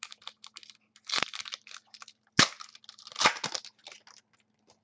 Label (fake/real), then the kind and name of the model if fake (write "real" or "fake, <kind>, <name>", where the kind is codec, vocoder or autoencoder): real